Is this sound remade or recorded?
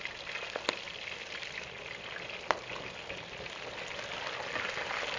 recorded